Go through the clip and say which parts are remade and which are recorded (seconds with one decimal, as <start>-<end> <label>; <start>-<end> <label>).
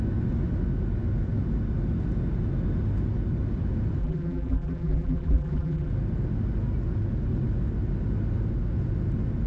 0.0-4.0 recorded; 4.0-5.9 remade; 5.9-9.5 recorded